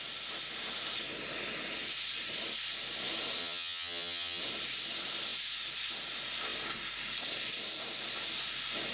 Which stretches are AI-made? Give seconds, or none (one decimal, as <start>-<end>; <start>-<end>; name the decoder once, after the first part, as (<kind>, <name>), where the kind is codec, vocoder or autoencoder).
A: 3.4-4.4 (vocoder, HiFi-GAN)